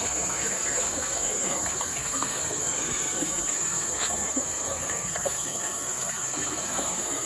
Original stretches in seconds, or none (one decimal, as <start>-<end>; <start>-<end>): none